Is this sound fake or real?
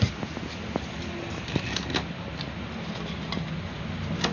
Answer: real